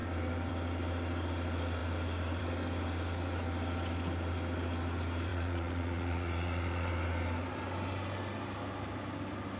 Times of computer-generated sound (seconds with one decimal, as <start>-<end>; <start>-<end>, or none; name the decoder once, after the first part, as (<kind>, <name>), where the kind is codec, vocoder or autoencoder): 5.3-6.9 (vocoder, Vocos)